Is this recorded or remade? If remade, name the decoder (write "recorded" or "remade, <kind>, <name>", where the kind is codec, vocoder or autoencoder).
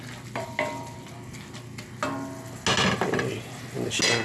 recorded